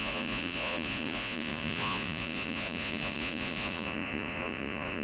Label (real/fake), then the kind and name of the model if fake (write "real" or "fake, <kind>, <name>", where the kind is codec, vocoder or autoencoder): fake, vocoder, Vocos